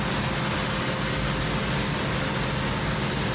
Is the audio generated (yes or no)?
no